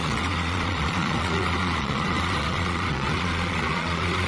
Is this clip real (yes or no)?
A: no